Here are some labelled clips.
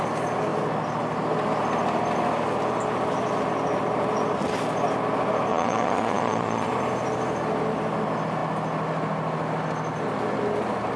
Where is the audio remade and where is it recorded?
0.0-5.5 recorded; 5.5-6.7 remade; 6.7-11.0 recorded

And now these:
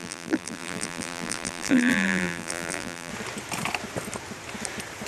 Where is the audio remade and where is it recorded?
0.0-3.1 remade; 3.1-5.1 recorded

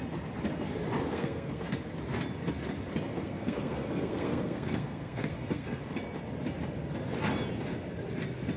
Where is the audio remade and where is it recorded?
0.0-1.1 recorded; 1.1-1.8 remade; 1.8-3.1 recorded; 3.1-5.8 remade; 5.8-8.6 recorded

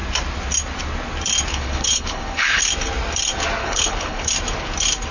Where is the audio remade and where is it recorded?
0.0-1.5 recorded; 1.5-2.6 remade; 2.6-3.6 recorded; 3.6-4.3 remade; 4.3-5.1 recorded